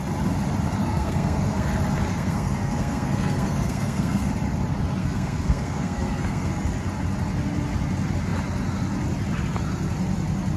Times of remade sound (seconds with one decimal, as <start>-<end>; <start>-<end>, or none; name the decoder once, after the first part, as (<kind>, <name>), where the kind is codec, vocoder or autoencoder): 0.8-1.7 (codec, SNAC); 2.1-4.3; 5.0-6.5